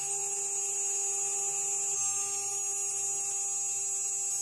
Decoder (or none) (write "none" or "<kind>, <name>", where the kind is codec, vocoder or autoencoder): none